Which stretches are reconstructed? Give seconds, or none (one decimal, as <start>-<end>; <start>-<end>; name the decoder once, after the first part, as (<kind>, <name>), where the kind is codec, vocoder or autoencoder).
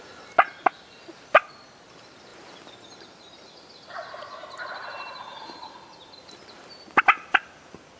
none